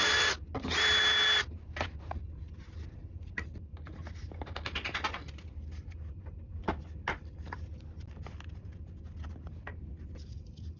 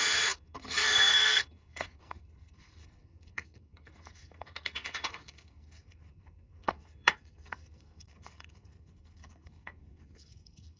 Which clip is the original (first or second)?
first